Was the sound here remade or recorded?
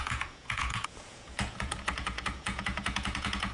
remade